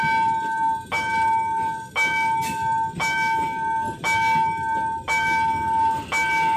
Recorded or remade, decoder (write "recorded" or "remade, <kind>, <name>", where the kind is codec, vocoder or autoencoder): recorded